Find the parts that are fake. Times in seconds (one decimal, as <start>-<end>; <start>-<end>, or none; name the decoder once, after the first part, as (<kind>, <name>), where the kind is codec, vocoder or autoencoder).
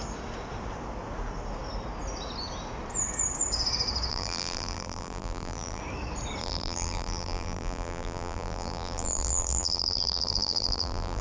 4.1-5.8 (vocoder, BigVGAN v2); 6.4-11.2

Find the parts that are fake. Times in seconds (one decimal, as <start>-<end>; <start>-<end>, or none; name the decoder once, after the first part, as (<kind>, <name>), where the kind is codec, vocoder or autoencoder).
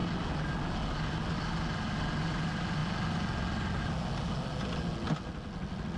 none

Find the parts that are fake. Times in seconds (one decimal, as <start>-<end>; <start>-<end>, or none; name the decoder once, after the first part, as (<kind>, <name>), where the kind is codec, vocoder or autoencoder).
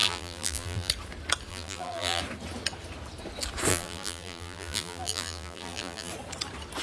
0.0-0.9 (vocoder, BigVGAN v2); 1.5-2.2; 3.7-6.1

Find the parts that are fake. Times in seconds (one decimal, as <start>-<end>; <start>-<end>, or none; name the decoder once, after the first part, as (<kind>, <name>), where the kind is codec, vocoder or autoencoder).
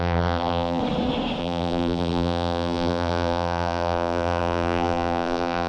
0.0-0.8 (vocoder, BigVGAN v2); 1.4-5.7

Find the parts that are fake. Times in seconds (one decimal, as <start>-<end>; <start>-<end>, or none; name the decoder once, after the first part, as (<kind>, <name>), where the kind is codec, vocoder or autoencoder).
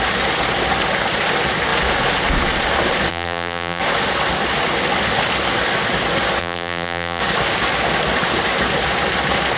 3.1-3.8 (vocoder, BigVGAN v2); 6.4-7.2